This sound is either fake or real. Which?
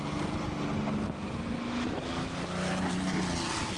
real